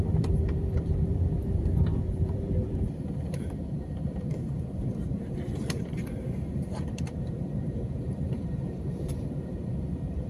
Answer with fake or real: fake